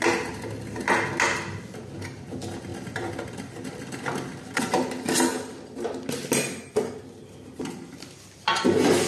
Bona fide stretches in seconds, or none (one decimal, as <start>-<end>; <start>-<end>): 0.0-9.1